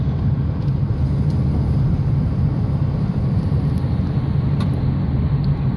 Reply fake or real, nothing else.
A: real